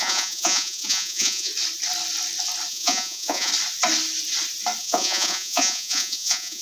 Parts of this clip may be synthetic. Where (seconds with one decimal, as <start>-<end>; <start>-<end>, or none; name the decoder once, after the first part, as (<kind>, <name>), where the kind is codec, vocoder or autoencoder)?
0.0-1.5 (vocoder, Vocos); 2.7-3.5; 4.8-6.6